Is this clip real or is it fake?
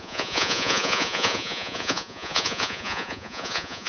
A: fake